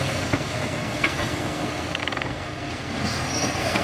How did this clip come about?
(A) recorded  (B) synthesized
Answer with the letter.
B